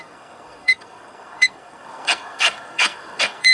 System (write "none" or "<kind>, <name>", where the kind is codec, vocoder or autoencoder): codec, SNAC